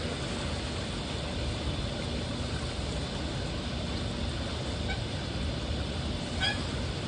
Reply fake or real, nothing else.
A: real